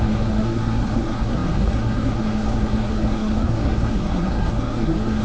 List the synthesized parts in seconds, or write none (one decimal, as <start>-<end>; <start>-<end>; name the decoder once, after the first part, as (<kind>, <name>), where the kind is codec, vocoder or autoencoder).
0.0-5.2 (codec, SNAC)